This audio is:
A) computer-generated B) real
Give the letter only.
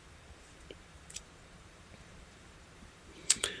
A